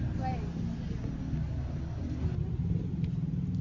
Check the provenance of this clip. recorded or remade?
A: recorded